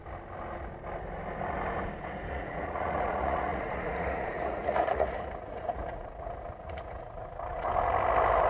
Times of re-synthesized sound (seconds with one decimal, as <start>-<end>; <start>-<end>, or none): 2.3-7.7